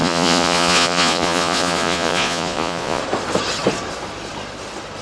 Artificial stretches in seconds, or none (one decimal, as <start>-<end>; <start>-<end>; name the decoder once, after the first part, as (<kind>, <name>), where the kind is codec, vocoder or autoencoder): 0.0-3.0 (vocoder, Vocos)